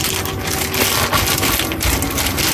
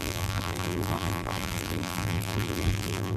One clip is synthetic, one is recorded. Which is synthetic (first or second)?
second